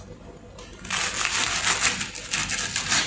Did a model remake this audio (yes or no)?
no